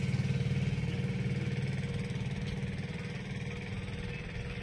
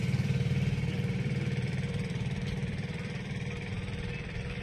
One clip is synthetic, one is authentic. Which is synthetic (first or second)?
second